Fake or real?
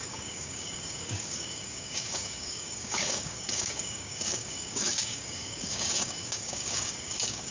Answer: fake